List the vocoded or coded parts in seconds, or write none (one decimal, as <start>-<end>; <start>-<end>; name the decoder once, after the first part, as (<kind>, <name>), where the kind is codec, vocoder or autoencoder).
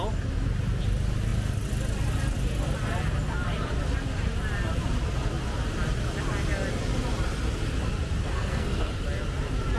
8.2-8.9 (codec, SNAC)